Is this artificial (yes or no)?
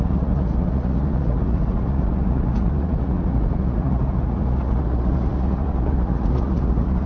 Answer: yes